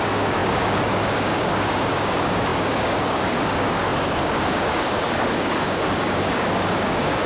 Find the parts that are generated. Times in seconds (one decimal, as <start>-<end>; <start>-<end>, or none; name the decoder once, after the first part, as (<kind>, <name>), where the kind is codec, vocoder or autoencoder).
0.0-7.3 (codec, DAC)